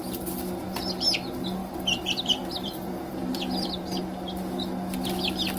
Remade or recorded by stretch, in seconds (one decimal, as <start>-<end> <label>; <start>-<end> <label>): 0.0-1.6 recorded; 1.6-4.0 remade; 4.0-5.6 recorded